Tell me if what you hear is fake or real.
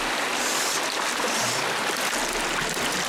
real